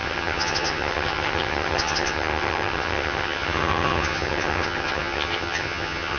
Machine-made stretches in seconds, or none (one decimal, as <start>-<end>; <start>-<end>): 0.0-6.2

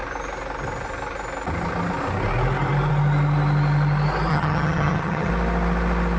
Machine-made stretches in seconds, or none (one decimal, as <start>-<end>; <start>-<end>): 4.3-5.3

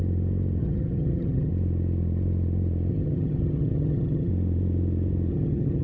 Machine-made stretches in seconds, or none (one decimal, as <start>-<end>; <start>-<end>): 0.6-1.5; 2.9-4.3; 5.3-5.8

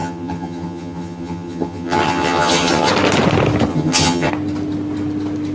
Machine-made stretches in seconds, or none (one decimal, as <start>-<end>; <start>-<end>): 0.0-2.9; 3.7-4.3

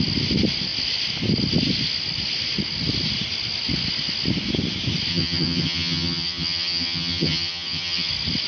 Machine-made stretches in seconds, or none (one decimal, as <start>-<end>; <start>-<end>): 5.1-8.1

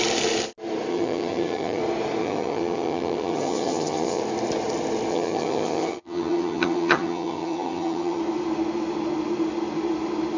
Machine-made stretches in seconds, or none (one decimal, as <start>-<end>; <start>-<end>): 0.9-1.8; 2.2-4.2; 5.1-8.2

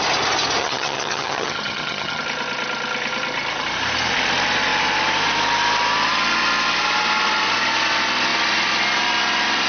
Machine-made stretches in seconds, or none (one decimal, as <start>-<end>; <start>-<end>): 0.6-2.2